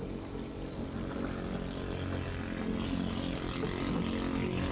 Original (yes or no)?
yes